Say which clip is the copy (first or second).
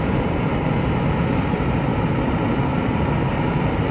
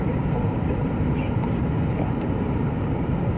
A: second